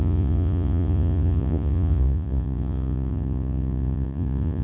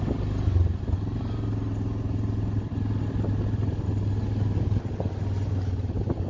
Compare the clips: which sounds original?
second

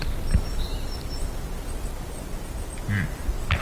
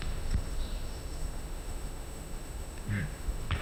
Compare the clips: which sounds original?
first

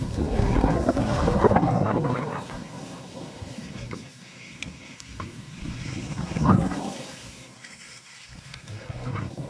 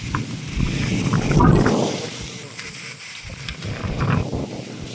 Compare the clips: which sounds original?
second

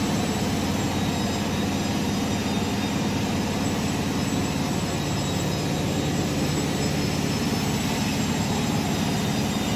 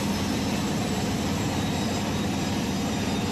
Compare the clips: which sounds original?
first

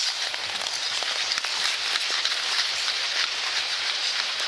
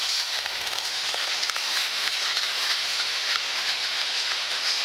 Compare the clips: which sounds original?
first